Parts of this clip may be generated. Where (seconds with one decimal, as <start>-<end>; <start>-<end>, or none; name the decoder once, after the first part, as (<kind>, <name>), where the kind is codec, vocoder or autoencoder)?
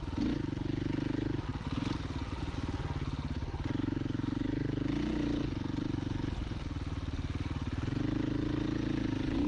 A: none